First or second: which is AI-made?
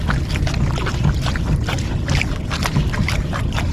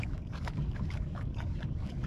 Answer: second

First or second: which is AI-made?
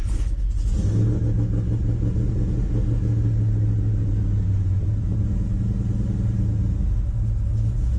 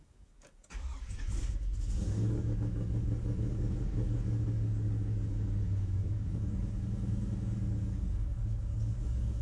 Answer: second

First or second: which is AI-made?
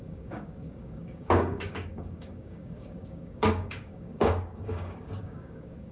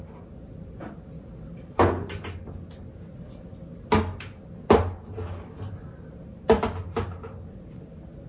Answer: first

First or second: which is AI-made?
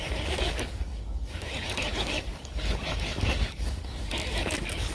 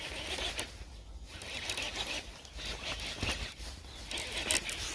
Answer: first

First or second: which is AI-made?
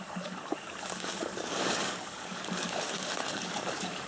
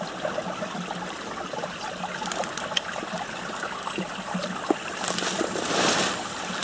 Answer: first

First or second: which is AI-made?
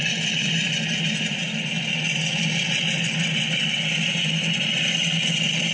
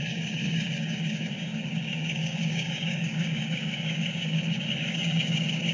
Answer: second